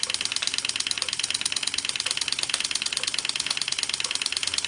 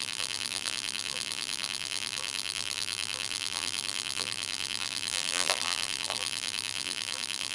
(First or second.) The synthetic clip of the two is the second